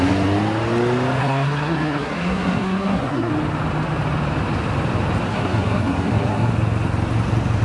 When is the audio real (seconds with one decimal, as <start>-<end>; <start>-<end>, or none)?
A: 0.0-1.2; 3.3-5.3; 6.5-7.6